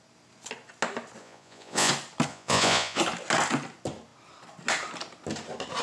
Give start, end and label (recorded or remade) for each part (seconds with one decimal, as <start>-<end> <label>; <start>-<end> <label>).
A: 0.0-1.2 recorded; 1.2-1.9 remade; 1.9-2.3 recorded; 2.3-3.0 remade; 3.0-5.8 recorded